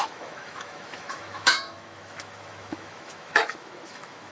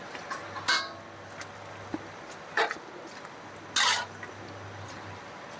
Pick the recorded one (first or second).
second